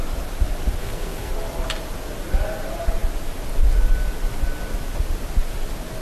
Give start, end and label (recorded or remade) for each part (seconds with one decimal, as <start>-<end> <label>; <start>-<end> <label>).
0.0-0.8 recorded; 0.8-1.3 remade; 1.3-6.0 recorded